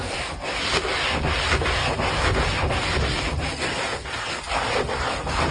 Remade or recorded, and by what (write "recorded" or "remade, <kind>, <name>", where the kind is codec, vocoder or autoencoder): recorded